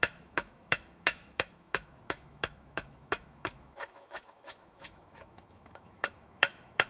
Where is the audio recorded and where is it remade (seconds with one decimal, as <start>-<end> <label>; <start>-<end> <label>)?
0.0-6.9 remade